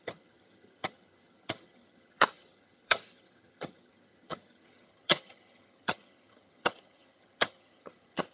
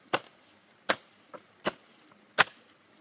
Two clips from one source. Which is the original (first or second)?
second